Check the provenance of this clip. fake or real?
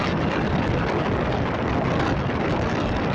real